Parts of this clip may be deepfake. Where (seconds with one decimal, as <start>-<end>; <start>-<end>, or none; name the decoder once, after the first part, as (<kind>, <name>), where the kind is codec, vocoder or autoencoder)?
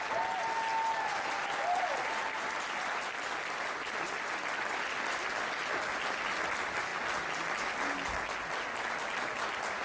none